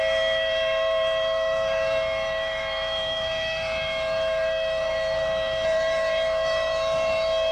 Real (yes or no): no